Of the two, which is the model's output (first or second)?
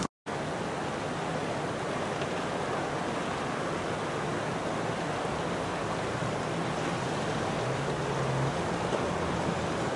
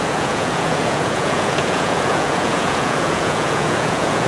second